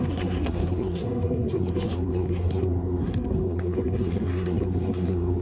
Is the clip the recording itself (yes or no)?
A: no